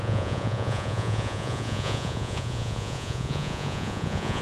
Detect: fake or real fake